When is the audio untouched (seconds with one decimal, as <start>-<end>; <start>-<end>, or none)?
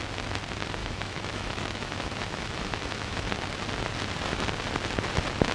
0.0-0.8; 3.3-5.5